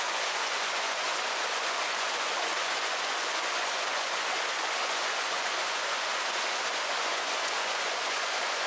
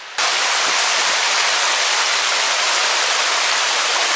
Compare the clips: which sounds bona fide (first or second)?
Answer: second